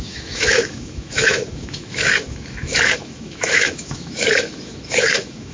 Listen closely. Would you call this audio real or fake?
fake